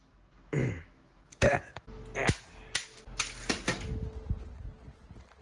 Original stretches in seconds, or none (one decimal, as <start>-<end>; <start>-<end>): 2.0-5.4